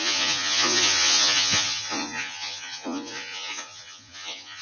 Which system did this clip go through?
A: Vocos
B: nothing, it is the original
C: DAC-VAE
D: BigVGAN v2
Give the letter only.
A